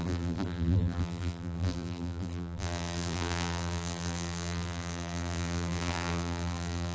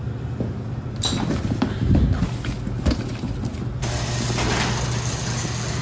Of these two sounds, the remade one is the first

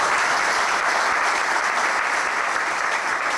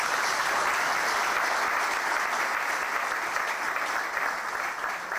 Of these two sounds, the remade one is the first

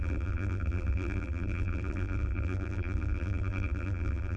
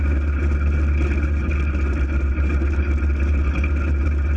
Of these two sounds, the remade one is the first